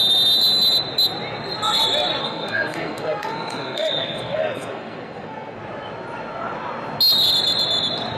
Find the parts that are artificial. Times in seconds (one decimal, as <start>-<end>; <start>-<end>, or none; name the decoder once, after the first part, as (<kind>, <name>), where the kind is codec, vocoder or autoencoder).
2.2-5.6 (codec, SNAC)